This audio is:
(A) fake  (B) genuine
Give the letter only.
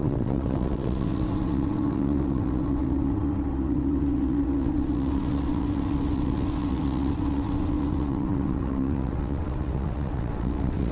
A